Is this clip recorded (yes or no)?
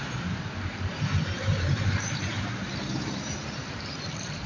no